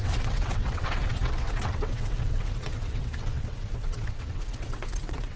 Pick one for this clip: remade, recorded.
remade